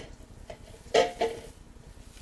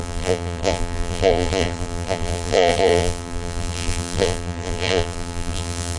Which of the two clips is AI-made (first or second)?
second